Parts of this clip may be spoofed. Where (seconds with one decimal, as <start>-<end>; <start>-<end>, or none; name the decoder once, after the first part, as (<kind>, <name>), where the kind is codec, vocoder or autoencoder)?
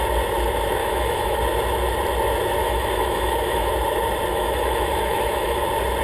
0.8-1.4 (autoencoder, DAC-VAE); 2.6-3.7; 4.3-5.6